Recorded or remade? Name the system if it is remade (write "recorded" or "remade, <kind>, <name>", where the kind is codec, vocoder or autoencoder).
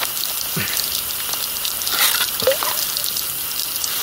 recorded